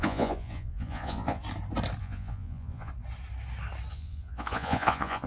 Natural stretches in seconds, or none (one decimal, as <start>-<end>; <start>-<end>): 1.4-2.0; 2.9-3.9